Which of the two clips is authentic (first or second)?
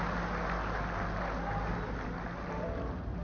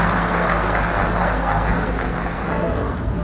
first